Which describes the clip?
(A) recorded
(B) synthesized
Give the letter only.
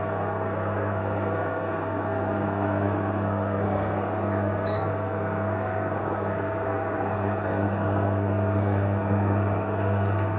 B